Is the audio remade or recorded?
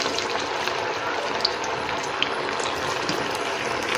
recorded